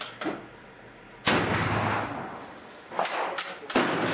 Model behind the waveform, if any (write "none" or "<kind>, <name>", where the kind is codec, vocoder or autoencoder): none